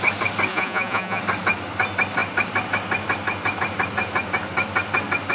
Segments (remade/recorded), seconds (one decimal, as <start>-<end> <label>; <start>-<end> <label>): 0.0-0.5 recorded; 0.5-1.2 remade; 1.2-5.3 recorded